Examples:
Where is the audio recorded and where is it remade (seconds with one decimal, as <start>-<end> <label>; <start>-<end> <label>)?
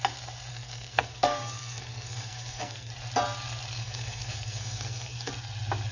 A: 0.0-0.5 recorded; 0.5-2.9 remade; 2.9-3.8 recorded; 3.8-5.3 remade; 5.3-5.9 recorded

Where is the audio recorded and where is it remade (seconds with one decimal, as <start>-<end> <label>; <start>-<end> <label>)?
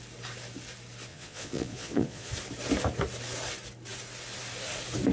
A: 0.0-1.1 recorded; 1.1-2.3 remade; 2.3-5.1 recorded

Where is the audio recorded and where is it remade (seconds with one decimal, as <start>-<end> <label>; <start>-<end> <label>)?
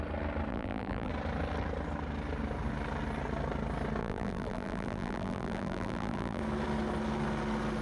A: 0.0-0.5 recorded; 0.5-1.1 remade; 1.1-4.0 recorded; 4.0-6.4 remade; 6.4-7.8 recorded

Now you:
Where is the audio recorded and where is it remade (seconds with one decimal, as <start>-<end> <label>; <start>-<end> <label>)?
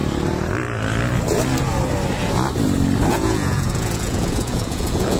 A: 0.0-3.1 recorded; 3.1-5.2 remade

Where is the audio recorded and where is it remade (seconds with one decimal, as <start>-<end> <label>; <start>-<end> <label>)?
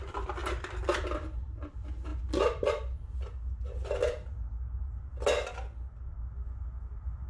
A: 0.0-0.4 recorded; 0.4-1.7 remade; 1.7-7.3 recorded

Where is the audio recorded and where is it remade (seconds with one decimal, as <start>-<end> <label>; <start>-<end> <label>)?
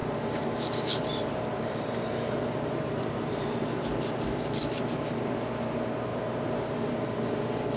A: 0.0-3.6 remade; 3.6-6.1 recorded; 6.1-6.9 remade; 6.9-7.8 recorded